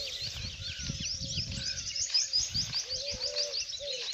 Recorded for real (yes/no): yes